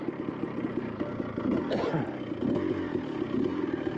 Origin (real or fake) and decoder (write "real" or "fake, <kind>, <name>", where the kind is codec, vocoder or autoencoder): real